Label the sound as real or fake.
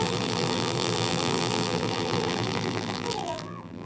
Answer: fake